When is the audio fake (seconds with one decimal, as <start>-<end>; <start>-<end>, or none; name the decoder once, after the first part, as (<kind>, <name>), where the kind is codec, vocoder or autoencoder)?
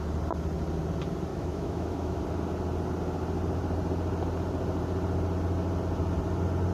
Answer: 1.3-2.2 (autoencoder, DAC-VAE)